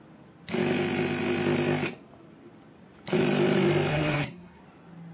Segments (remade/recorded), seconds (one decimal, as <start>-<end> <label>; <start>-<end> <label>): 0.0-3.9 recorded; 3.9-4.6 remade; 4.6-5.1 recorded

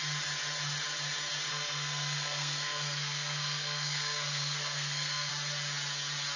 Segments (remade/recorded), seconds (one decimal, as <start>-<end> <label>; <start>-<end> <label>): 0.0-1.5 recorded; 1.5-5.3 remade; 5.3-6.4 recorded

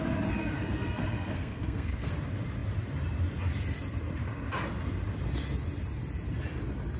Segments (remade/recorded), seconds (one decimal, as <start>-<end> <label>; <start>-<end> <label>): 0.0-0.4 recorded; 0.4-2.1 remade; 2.1-7.0 recorded

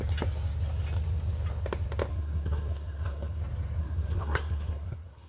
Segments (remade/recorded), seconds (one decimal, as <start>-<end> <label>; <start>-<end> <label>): 0.0-2.1 recorded; 2.1-3.4 remade; 3.4-3.8 recorded; 3.8-5.3 remade

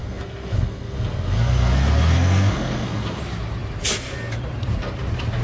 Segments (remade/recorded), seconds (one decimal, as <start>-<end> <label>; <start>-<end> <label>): 0.0-3.2 remade; 3.2-5.4 recorded